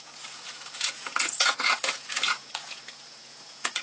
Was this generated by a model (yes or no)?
yes